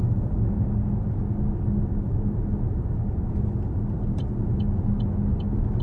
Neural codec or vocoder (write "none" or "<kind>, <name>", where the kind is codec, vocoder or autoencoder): none